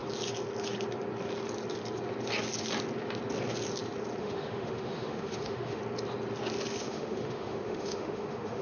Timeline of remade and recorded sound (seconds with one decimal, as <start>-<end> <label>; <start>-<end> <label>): 0.0-4.2 recorded; 4.2-5.8 remade; 5.8-6.8 recorded; 6.8-8.6 remade